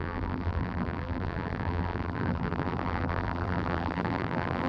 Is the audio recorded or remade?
remade